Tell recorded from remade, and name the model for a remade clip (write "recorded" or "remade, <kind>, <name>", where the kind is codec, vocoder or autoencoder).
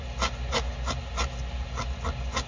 recorded